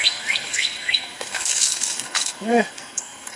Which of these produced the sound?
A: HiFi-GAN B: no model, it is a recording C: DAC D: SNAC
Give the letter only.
D